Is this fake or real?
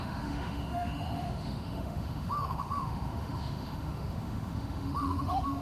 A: fake